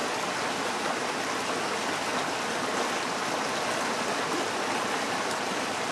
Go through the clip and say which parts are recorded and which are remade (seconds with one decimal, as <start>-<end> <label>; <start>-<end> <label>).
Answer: 0.0-5.9 recorded